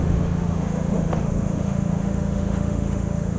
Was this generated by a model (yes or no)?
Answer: yes